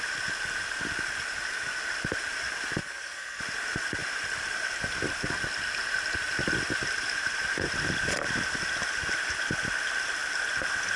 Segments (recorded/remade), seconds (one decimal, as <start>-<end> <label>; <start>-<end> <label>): 0.0-2.8 recorded; 2.8-3.4 remade; 3.4-11.0 recorded